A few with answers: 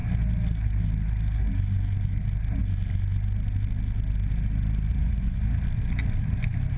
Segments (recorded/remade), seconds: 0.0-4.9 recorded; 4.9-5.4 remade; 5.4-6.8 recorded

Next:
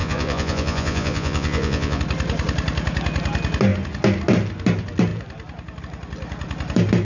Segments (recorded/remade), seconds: 0.0-2.0 remade; 2.0-7.0 recorded